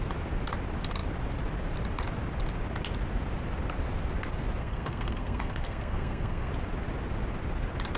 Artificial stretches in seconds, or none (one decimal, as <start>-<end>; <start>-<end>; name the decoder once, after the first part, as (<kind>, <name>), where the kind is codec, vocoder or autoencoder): 4.6-6.5 (codec, SNAC)

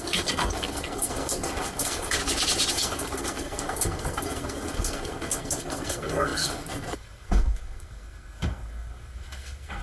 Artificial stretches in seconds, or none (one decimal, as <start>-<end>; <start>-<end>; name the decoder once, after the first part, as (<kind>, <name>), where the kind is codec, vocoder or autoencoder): 0.0-2.2 (codec, SNAC); 2.7-9.8

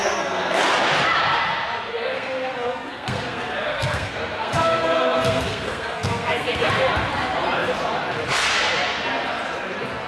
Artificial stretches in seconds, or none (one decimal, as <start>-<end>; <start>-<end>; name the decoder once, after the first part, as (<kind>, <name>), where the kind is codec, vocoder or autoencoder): 0.0-0.6 (codec, SNAC); 1.9-6.7

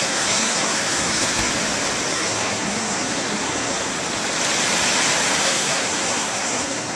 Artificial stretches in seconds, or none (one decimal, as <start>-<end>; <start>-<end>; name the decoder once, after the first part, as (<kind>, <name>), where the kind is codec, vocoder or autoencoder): 0.0-1.5 (codec, SNAC); 2.1-3.9; 5.4-7.0

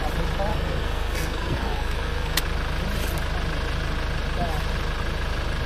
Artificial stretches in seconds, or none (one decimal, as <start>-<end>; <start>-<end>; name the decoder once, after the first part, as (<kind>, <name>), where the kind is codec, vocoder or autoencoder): 0.5-2.4 (codec, SNAC)

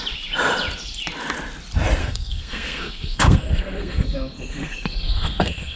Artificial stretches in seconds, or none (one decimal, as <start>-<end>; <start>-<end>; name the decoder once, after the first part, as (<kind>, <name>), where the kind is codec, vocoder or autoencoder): 2.0-5.8 (codec, SNAC)

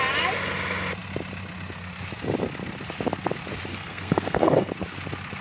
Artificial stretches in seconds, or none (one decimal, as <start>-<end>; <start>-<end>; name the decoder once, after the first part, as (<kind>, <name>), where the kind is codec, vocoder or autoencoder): 3.7-4.7 (codec, SNAC)

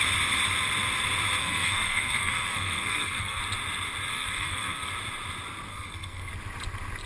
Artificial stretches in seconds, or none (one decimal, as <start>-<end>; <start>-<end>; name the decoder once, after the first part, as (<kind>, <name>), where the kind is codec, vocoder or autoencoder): 1.4-3.4 (codec, SNAC); 4.1-4.9; 5.7-6.3